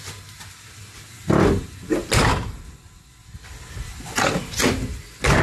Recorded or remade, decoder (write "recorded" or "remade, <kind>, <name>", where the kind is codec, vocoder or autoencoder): recorded